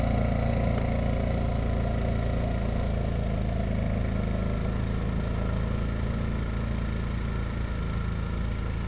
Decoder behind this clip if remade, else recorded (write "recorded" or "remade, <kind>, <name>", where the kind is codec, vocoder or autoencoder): recorded